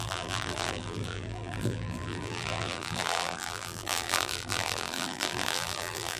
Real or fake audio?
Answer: fake